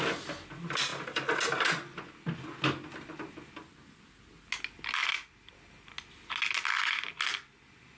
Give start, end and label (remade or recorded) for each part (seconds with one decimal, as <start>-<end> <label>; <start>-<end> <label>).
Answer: 0.0-8.0 recorded